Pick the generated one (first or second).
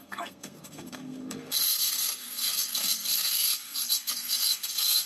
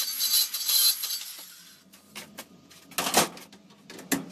first